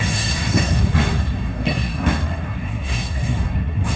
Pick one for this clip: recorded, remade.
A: remade